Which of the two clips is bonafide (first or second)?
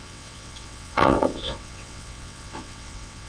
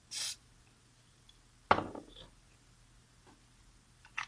second